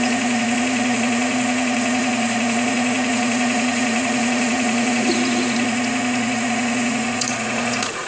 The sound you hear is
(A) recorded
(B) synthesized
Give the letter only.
B